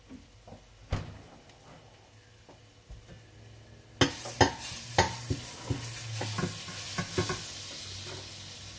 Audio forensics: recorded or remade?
recorded